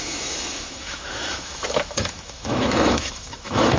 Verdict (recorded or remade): remade